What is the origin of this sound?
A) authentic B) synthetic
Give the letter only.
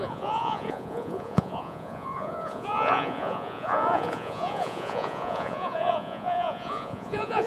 B